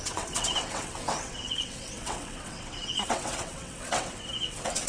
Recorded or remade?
remade